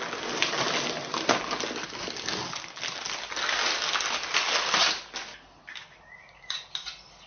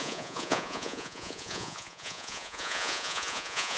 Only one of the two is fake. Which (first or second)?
second